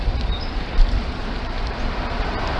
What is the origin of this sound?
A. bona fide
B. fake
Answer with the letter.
B